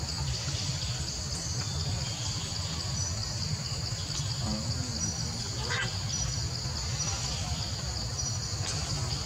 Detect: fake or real real